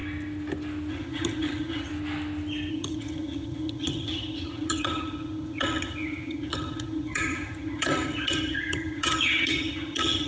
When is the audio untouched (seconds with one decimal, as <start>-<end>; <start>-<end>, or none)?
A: 0.0-0.9; 1.9-2.7